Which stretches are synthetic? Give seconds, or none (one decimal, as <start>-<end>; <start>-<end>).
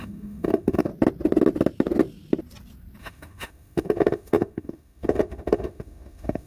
0.0-0.9; 3.0-6.5